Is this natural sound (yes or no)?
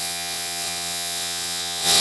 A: no